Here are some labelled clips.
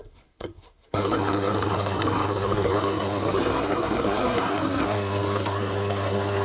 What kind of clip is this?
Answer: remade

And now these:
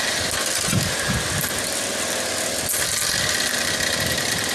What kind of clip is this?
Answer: recorded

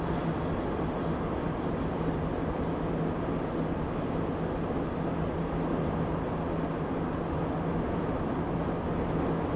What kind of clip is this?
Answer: recorded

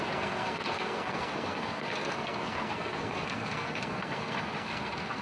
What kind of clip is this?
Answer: remade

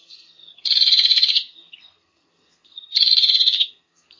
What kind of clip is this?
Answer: remade